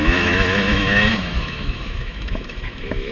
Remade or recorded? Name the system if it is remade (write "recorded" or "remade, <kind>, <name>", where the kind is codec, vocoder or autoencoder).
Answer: remade, autoencoder, DAC-VAE